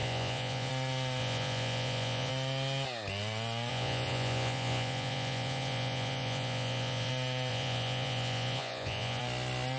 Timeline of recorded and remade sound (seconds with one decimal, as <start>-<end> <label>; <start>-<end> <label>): 0.0-0.7 remade; 0.7-1.2 recorded; 1.2-2.3 remade; 2.3-3.7 recorded; 3.7-7.1 remade; 7.1-7.5 recorded; 7.5-9.2 remade; 9.2-9.8 recorded